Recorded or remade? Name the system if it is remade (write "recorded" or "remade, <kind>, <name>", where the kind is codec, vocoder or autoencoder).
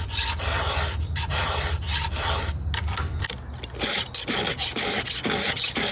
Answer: recorded